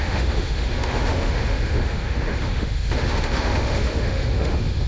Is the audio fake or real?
fake